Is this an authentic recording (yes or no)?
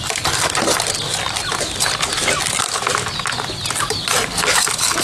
yes